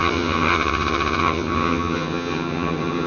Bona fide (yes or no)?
no